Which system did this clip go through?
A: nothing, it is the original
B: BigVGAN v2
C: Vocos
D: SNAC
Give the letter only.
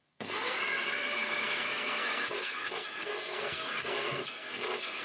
D